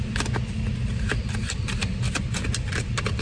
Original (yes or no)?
yes